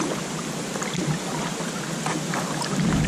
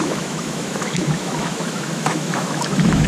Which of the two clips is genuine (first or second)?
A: first